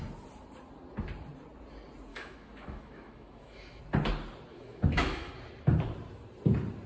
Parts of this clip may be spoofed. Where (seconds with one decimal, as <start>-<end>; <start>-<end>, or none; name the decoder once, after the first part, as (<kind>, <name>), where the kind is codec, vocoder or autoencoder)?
2.1-3.8 (autoencoder, DAC-VAE); 4.5-5.3